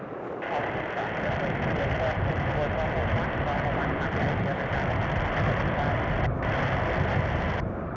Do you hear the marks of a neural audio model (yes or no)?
no